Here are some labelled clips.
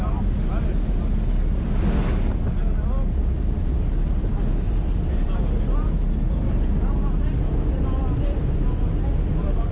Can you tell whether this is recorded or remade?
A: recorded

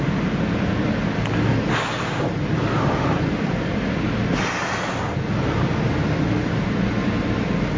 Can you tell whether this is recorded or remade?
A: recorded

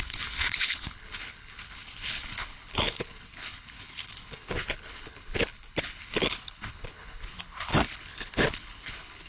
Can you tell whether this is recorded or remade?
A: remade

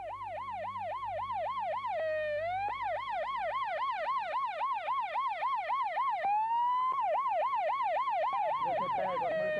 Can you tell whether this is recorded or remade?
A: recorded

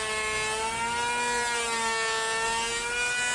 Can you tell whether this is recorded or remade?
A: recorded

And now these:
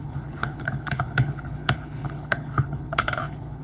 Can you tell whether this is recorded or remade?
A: remade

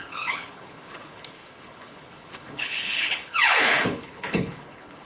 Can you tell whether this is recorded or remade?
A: remade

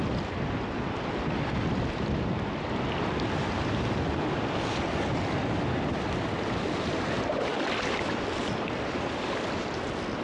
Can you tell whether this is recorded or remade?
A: recorded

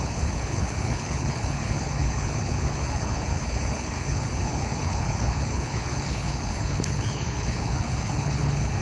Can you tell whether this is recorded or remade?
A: remade